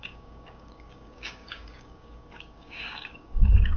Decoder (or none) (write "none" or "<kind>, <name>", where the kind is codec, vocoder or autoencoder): codec, DAC